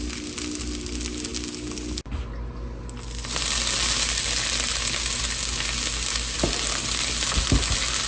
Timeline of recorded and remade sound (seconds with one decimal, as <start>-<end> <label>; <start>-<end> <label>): 0.0-8.1 recorded